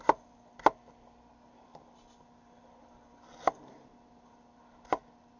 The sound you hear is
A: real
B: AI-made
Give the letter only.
A